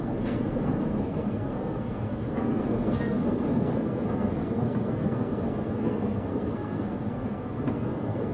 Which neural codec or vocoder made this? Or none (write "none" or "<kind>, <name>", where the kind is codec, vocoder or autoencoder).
codec, SNAC